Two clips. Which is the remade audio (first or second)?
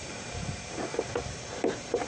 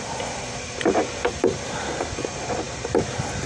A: first